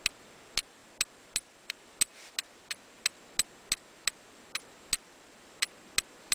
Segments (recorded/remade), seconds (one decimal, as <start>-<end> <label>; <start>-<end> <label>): 0.0-6.3 recorded